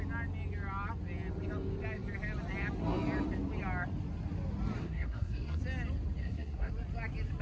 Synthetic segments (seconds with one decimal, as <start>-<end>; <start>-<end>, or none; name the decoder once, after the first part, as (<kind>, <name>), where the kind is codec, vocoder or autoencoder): 4.8-5.6 (codec, SNAC); 6.2-6.7

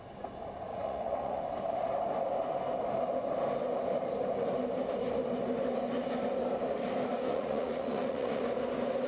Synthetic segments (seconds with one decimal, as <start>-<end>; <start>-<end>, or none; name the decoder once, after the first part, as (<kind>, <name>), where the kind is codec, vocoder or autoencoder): 0.7-1.4 (vocoder, Vocos); 7.3-8.4